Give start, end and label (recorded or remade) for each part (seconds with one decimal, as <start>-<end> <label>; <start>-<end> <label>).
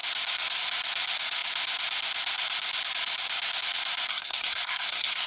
0.0-4.1 recorded; 4.1-5.3 remade